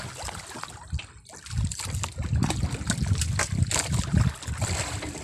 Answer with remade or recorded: recorded